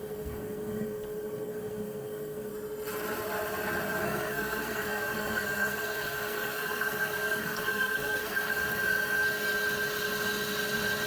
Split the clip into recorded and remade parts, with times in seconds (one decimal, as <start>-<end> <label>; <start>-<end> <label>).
0.0-2.5 remade; 2.5-4.0 recorded; 4.0-8.6 remade; 8.6-11.1 recorded